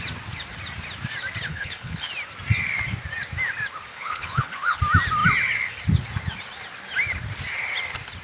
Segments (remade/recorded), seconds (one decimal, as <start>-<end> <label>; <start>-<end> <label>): 0.0-1.5 recorded; 1.5-2.1 remade; 2.1-3.9 recorded; 3.9-4.8 remade; 4.8-8.2 recorded